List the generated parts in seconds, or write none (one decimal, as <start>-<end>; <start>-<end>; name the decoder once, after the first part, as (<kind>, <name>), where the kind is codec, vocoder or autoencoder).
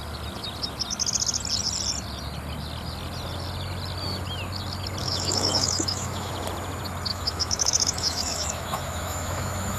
5.0-6.3 (autoencoder, DAC-VAE); 7.1-9.8